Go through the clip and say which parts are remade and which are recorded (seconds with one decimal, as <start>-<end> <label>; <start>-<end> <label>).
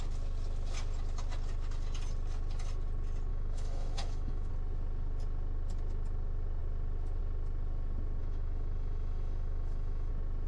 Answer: 0.0-3.3 recorded; 3.3-4.5 remade; 4.5-8.2 recorded; 8.2-10.1 remade; 10.1-10.5 recorded